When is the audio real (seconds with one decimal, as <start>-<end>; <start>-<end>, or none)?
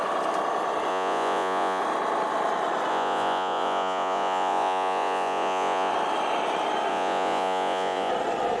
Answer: 0.0-0.9; 1.8-2.9; 5.9-6.9; 8.1-8.6